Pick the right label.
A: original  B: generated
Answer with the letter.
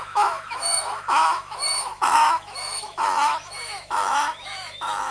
B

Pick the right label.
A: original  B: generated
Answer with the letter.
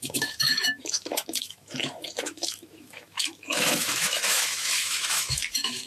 B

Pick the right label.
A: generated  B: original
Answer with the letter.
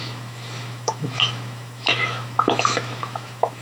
A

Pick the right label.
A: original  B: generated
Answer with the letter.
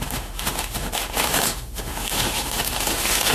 B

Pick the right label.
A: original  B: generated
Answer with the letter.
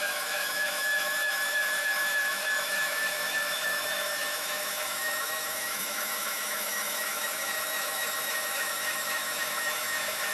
B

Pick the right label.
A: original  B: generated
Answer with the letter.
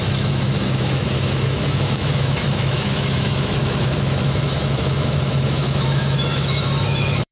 B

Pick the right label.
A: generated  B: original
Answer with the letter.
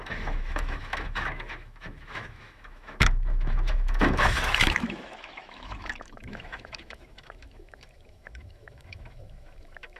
A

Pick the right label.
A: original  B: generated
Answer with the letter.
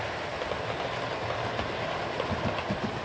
A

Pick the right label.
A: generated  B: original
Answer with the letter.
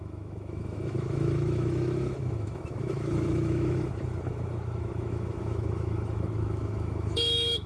A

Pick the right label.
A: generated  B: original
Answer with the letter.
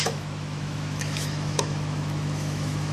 A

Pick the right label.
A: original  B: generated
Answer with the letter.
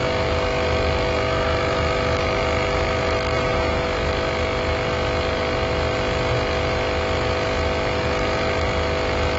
B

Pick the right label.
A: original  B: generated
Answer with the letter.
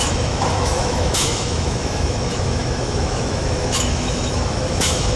B